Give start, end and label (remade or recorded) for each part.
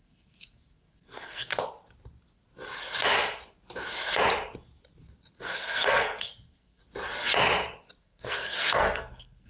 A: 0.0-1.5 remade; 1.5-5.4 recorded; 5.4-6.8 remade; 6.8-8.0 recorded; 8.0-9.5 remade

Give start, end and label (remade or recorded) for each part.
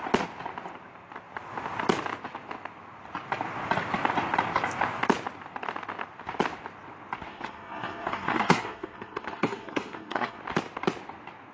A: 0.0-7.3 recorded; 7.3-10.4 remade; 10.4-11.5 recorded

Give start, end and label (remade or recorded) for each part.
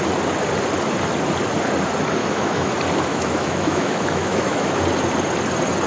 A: 0.0-2.2 recorded; 2.2-2.7 remade; 2.7-3.1 recorded; 3.1-4.8 remade; 4.8-5.9 recorded